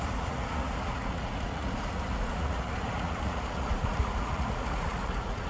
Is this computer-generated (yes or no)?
yes